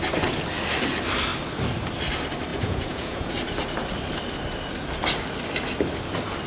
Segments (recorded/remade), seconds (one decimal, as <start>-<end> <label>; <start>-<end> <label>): 0.0-2.5 recorded; 2.5-3.3 remade; 3.3-6.5 recorded